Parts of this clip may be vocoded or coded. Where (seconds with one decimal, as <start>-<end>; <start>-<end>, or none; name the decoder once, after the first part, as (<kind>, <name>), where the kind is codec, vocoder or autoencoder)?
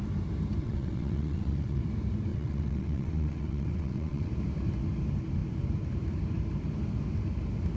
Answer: 0.6-1.8 (vocoder, WaveNeXt); 2.3-4.3